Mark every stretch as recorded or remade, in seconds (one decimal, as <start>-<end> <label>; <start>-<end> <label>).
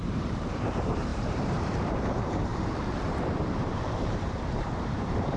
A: 0.0-5.4 remade